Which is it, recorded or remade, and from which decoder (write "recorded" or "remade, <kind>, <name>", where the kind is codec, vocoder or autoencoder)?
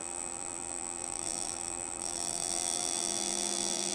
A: remade, vocoder, BigVGAN v2